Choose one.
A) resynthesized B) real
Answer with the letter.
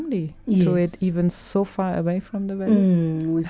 B